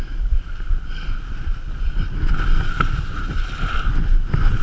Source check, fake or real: real